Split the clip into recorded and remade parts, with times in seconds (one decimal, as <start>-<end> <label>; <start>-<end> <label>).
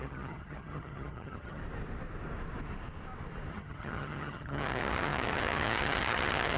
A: 0.0-1.6 remade; 1.6-3.5 recorded; 3.5-6.6 remade